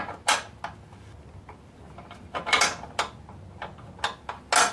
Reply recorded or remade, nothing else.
recorded